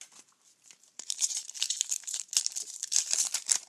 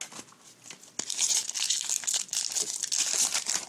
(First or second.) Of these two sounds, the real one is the second